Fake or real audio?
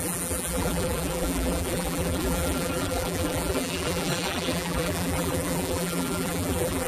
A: fake